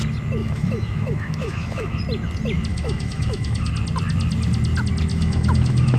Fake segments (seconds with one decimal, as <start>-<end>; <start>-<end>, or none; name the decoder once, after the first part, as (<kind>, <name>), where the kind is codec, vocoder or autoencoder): 0.4-2.0 (autoencoder, DAC-VAE); 2.7-3.7; 5.1-6.0